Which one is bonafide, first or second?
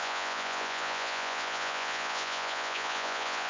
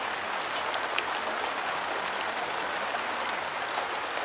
second